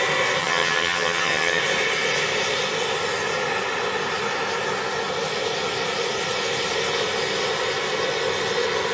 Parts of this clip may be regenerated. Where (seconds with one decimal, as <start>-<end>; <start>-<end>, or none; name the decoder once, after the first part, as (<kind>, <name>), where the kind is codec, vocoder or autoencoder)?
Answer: 0.4-1.6 (vocoder, HiFi-GAN)